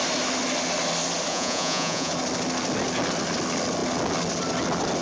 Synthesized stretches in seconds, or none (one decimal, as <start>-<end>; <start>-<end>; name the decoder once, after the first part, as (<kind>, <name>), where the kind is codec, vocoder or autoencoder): 1.3-2.1 (vocoder, Vocos)